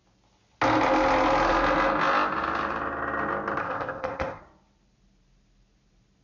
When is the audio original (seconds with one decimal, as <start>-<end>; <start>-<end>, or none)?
0.0-3.6; 4.4-6.2